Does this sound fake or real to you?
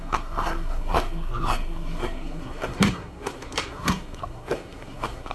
fake